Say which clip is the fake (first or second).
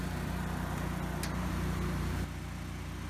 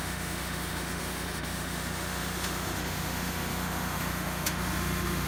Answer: second